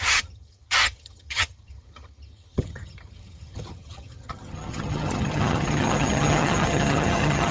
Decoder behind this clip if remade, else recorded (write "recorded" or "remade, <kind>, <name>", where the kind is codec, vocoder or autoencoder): remade, vocoder, HiFi-GAN